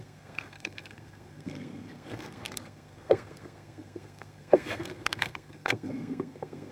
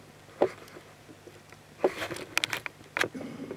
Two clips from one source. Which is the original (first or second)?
second